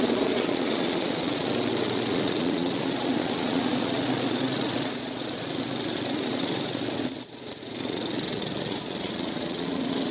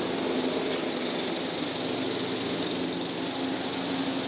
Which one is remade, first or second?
first